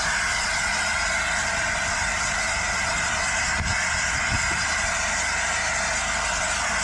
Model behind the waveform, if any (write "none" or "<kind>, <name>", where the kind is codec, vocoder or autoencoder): none